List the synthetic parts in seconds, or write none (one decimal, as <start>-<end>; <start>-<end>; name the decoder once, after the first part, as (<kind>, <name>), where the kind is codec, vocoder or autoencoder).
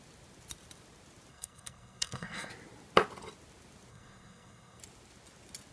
1.3-2.5 (codec, SNAC); 3.9-4.8